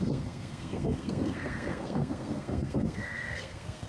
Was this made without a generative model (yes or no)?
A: no